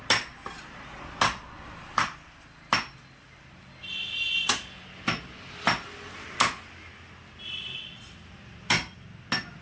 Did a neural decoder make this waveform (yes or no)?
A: no